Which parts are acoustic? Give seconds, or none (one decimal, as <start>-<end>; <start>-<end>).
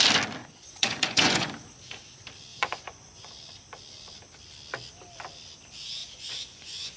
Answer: 0.0-0.4; 1.5-2.5; 3.3-6.0